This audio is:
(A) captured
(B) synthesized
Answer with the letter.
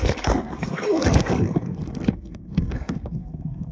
B